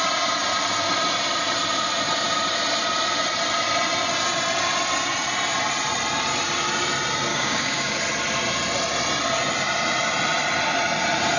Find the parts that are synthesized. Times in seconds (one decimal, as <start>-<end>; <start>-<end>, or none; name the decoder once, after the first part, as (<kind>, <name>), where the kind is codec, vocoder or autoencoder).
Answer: 7.3-8.0 (codec, DAC)